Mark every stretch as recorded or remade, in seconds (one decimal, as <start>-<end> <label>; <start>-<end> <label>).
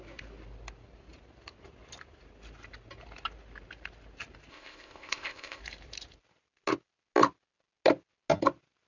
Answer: 0.0-4.5 recorded; 4.5-5.6 remade; 5.6-8.9 recorded